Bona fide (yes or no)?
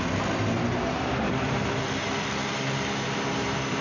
yes